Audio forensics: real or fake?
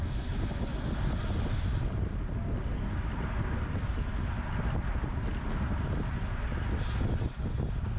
real